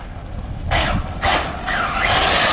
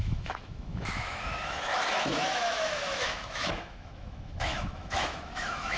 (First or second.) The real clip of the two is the first